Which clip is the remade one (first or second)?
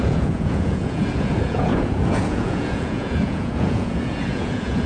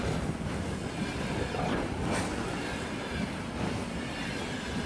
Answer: first